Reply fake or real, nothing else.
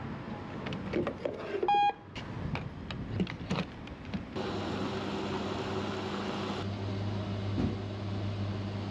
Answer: real